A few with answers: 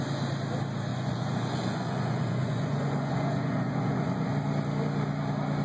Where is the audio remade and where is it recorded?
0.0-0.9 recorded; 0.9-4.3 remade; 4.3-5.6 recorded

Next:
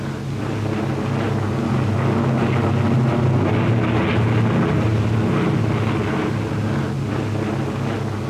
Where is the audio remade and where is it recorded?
0.0-8.3 recorded

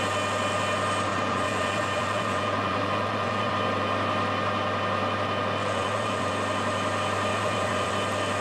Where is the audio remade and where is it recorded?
0.0-1.1 recorded; 1.1-3.5 remade; 3.5-5.6 recorded; 5.6-6.3 remade; 6.3-7.3 recorded; 7.3-7.9 remade; 7.9-8.4 recorded

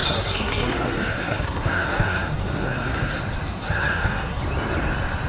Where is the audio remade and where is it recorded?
0.0-3.2 remade; 3.2-3.6 recorded; 3.6-4.4 remade; 4.4-5.3 recorded

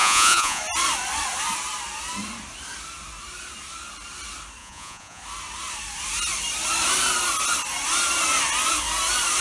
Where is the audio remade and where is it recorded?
0.0-0.6 remade; 0.6-4.6 recorded; 4.6-5.2 remade; 5.2-9.4 recorded